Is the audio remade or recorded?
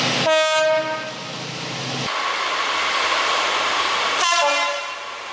recorded